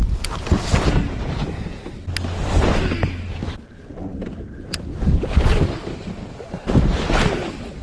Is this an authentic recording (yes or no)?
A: yes